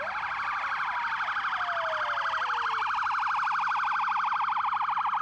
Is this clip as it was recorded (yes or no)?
yes